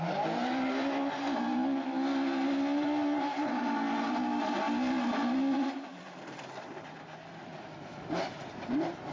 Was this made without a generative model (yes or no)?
yes